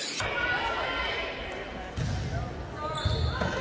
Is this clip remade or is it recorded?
recorded